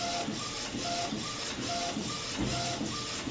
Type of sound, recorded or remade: recorded